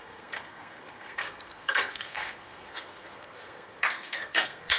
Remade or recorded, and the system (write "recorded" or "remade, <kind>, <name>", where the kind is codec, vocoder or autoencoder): remade, codec, SNAC